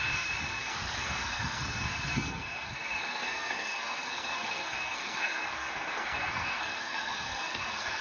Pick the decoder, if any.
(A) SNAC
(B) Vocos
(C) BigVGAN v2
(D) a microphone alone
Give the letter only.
A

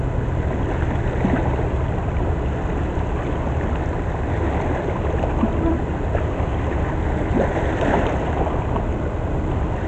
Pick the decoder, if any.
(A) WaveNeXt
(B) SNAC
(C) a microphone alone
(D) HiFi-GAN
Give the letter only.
C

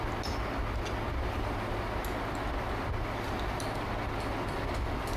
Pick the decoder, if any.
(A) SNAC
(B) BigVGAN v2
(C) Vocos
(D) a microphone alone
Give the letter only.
D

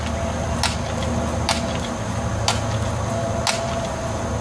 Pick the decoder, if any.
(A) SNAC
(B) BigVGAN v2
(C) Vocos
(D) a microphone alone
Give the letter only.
D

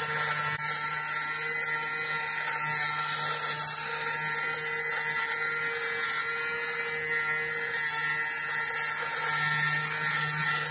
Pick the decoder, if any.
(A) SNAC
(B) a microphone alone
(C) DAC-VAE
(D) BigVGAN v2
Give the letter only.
B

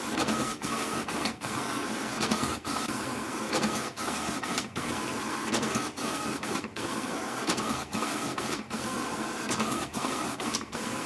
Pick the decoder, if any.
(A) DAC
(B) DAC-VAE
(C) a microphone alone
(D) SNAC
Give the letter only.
D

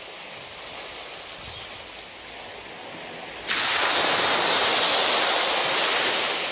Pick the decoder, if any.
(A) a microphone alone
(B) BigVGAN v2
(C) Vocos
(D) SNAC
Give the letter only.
A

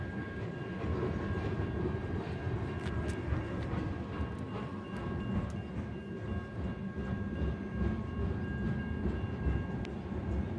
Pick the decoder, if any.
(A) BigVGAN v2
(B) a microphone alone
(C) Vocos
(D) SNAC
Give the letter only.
B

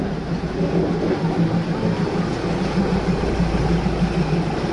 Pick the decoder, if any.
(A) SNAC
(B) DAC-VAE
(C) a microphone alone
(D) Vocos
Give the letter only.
C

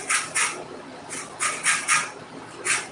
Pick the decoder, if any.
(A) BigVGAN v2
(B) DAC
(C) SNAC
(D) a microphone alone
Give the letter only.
D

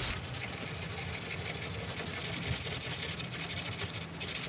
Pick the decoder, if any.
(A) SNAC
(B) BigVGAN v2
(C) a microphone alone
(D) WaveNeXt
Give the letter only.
C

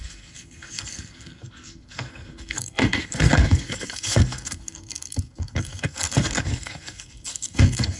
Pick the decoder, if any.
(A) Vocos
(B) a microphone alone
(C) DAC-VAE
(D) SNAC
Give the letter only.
D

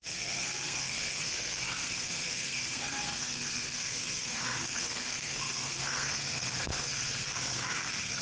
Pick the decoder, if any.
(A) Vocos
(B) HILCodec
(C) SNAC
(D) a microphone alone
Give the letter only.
C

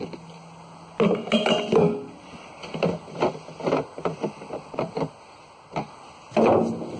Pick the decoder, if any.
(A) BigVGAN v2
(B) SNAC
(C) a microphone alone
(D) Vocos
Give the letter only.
C